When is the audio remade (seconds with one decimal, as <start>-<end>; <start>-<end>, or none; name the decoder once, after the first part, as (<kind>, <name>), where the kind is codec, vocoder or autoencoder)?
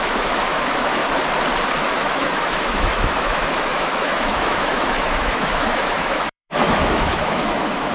0.0-1.0 (autoencoder, DAC-VAE); 1.9-7.9